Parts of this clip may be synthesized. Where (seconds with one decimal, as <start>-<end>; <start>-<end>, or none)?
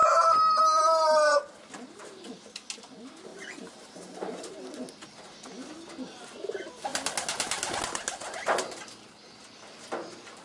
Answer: 3.3-4.5